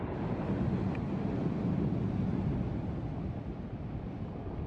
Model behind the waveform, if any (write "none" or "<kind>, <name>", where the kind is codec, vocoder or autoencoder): none